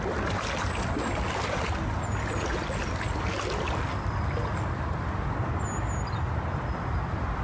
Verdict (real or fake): real